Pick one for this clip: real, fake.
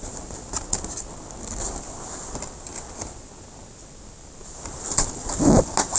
real